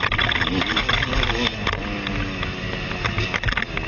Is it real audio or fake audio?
real